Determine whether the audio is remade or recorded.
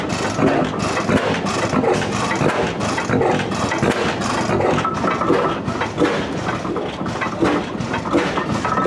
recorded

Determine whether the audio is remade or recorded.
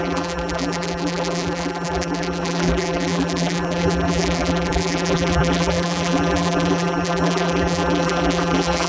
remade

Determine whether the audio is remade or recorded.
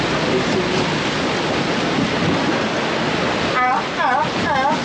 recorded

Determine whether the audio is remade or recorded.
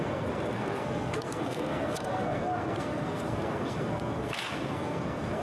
remade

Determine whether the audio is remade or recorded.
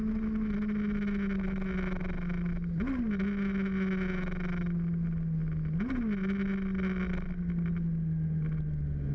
recorded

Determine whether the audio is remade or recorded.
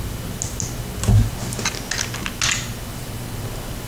recorded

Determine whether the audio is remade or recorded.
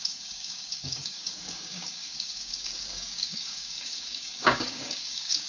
remade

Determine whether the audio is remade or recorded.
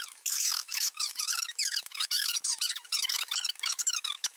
remade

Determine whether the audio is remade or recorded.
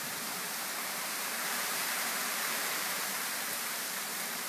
remade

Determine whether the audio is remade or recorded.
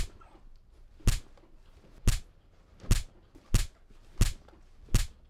recorded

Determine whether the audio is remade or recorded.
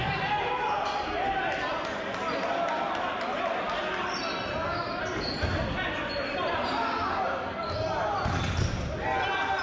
recorded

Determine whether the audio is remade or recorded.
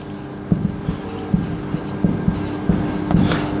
recorded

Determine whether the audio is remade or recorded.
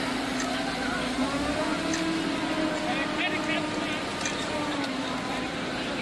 recorded